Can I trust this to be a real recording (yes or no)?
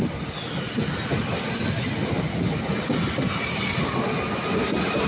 yes